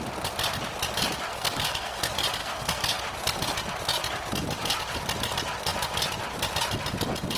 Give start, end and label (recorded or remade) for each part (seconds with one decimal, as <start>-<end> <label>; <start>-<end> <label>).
0.0-1.3 recorded; 1.3-2.0 remade; 2.0-2.4 recorded; 2.4-3.0 remade; 3.0-7.4 recorded